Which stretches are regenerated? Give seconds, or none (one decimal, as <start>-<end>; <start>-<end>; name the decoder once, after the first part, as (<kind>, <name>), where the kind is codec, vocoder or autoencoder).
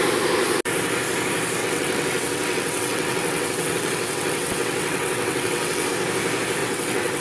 1.6-5.9 (vocoder, WaveNeXt); 6.6-7.2